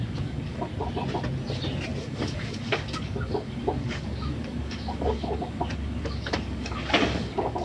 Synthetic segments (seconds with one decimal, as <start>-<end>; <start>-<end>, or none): 0.0-0.7; 2.0-7.6